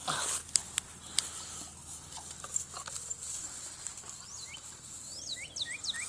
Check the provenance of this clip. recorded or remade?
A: recorded